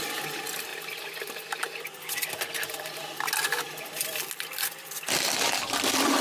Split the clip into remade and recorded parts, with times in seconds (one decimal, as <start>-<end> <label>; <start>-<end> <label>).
0.0-6.2 recorded